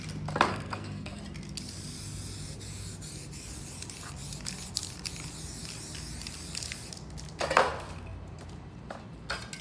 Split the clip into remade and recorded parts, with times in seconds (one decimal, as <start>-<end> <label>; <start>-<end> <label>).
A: 0.0-0.5 recorded; 0.5-1.2 remade; 1.2-9.6 recorded